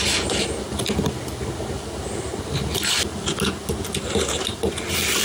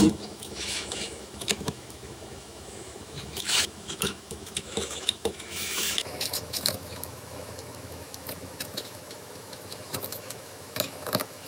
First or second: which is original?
first